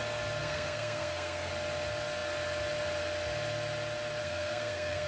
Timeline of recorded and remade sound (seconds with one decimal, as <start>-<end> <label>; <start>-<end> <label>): 0.0-0.4 recorded; 0.4-1.5 remade; 1.5-4.2 recorded; 4.2-5.1 remade